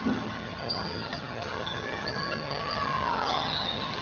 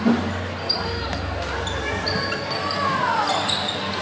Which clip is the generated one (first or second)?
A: first